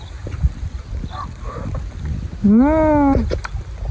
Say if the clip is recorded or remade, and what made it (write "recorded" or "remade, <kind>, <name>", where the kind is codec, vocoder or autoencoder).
recorded